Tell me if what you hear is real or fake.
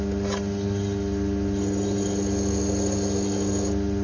real